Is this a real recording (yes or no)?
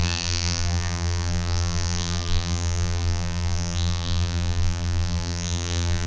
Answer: no